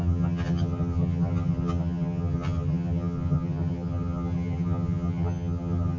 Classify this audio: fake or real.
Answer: fake